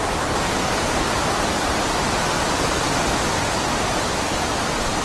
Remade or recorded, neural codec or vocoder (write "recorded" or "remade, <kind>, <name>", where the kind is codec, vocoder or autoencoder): recorded